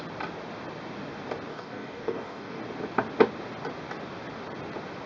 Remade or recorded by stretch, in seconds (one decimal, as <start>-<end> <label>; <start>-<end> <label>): 0.0-1.5 recorded; 1.5-2.6 remade; 2.6-5.1 recorded

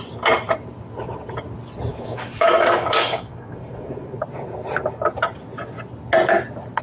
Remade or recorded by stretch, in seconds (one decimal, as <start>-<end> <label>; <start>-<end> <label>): 0.0-1.9 recorded; 1.9-4.2 remade; 4.2-6.8 recorded

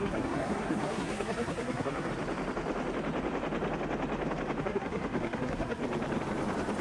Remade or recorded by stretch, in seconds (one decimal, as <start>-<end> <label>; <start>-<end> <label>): 0.0-2.1 remade; 2.1-4.6 recorded; 4.6-5.8 remade; 5.8-6.8 recorded

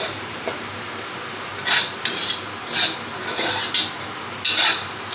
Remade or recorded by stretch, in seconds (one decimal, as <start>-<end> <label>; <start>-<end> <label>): 0.0-1.5 remade; 1.5-4.6 recorded; 4.6-5.1 remade

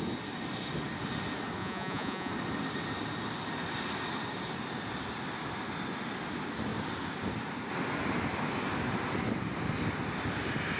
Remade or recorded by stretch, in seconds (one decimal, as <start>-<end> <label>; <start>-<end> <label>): 0.0-1.6 recorded; 1.6-2.3 remade; 2.3-10.8 recorded

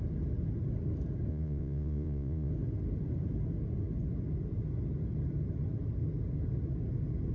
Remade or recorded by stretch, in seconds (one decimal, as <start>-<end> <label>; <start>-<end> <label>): 0.0-1.3 recorded; 1.3-2.5 remade; 2.5-7.3 recorded

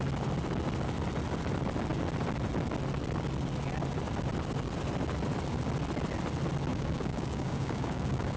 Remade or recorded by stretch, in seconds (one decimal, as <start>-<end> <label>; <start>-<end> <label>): 0.0-6.7 recorded; 6.7-8.4 remade